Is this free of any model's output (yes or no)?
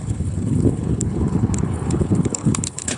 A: no